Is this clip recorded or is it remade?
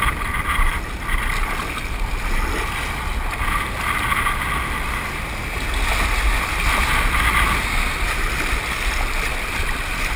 recorded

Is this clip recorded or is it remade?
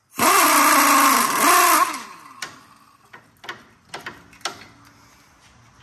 recorded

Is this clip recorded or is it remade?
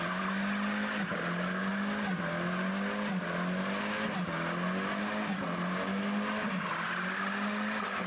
recorded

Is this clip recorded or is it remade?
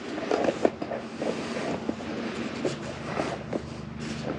recorded